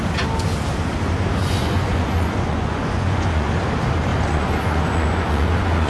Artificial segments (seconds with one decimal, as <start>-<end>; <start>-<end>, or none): 1.4-3.5; 4.1-5.9